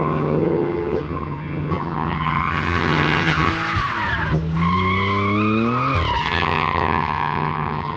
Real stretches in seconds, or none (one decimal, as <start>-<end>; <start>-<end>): 3.5-6.2